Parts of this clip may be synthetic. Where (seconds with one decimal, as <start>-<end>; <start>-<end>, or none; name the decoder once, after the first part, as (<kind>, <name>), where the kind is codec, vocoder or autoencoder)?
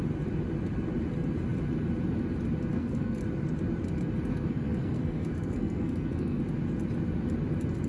2.7-3.2 (codec, SNAC); 4.3-6.4